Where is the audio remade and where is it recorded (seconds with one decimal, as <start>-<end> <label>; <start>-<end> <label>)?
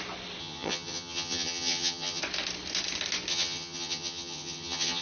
0.0-0.4 recorded; 0.4-2.2 remade; 2.2-3.3 recorded; 3.3-5.0 remade